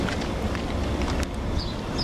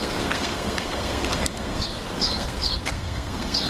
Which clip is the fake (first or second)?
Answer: second